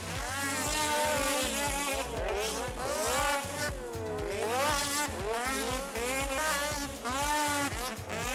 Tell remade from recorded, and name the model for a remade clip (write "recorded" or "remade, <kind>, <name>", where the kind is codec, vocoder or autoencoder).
recorded